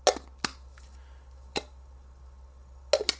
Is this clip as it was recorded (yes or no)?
yes